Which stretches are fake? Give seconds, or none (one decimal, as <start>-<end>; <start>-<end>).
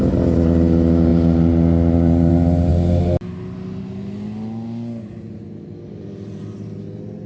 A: 1.1-2.3